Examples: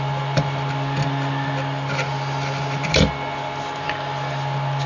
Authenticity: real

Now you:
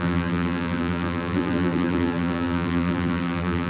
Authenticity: fake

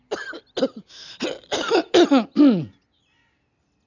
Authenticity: real